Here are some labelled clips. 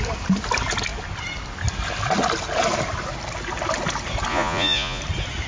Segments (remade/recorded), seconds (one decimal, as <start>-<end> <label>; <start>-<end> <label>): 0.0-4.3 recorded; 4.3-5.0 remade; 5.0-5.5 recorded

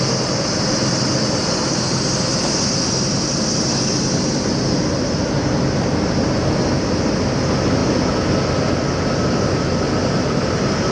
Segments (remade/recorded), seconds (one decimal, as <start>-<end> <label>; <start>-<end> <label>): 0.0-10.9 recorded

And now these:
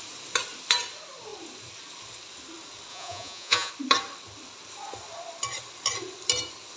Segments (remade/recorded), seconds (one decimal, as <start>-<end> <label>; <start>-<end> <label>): 0.0-2.9 recorded; 2.9-3.7 remade; 3.7-6.8 recorded